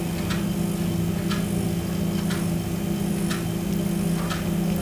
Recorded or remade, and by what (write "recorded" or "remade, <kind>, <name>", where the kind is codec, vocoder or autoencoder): recorded